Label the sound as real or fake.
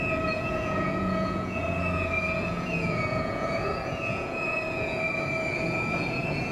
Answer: fake